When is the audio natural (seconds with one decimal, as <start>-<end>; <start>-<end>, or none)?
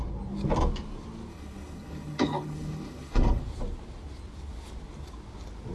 0.0-1.3; 3.4-5.7